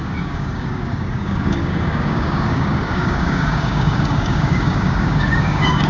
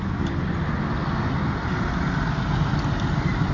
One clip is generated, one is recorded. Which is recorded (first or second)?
second